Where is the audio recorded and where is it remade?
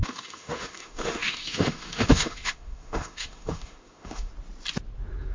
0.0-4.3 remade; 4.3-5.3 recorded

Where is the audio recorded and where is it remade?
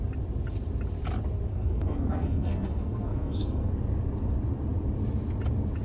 0.0-1.5 recorded; 1.5-3.7 remade; 3.7-5.8 recorded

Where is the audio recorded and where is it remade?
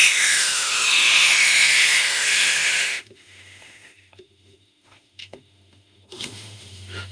0.0-7.1 remade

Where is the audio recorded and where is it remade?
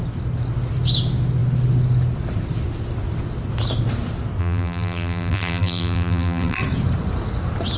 0.0-4.4 recorded; 4.4-6.6 remade; 6.6-7.8 recorded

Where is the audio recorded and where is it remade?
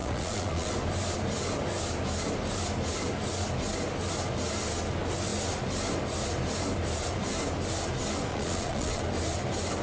0.0-0.7 remade; 0.7-8.3 recorded; 8.3-9.0 remade; 9.0-9.8 recorded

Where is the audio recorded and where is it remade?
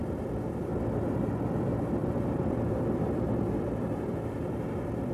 0.0-1.3 remade; 1.3-2.0 recorded; 2.0-5.1 remade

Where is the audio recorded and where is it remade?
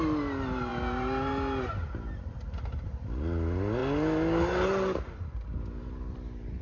0.0-6.6 recorded